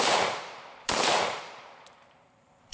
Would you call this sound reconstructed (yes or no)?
yes